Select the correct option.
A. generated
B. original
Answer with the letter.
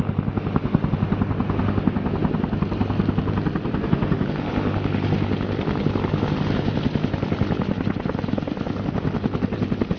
B